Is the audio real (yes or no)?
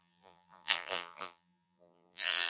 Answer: no